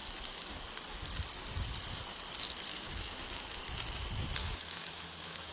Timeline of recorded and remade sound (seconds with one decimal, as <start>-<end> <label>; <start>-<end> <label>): 0.0-2.7 recorded; 2.7-3.6 remade; 3.6-4.4 recorded; 4.4-5.5 remade